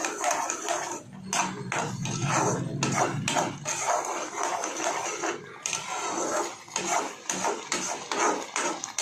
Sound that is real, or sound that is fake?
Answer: real